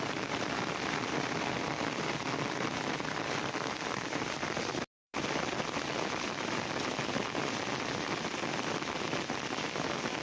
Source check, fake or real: real